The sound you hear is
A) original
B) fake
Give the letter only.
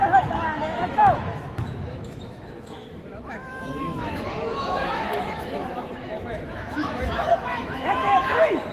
B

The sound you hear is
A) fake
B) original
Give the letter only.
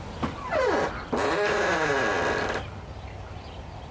B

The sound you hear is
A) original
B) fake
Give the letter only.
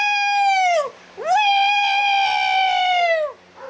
A